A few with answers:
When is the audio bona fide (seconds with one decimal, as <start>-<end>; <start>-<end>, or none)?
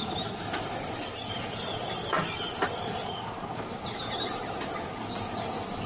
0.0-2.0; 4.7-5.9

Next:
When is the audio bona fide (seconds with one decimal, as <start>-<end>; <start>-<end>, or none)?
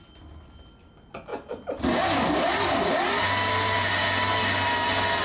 0.0-5.2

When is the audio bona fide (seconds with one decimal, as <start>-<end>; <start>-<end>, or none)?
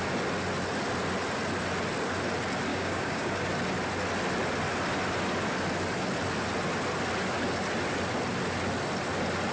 0.0-2.7; 3.3-9.5